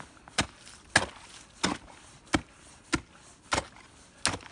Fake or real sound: real